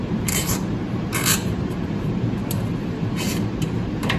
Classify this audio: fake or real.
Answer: fake